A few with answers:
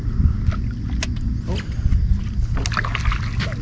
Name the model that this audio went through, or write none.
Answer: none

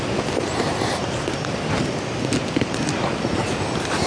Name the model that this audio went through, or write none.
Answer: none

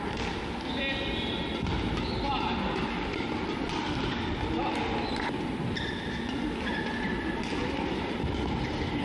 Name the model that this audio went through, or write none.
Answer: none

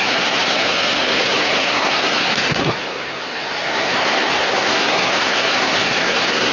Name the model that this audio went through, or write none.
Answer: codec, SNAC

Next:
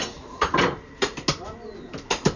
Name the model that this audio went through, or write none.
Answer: none